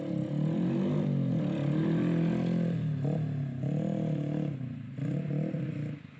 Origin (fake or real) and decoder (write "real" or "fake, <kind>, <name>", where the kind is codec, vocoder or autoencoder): real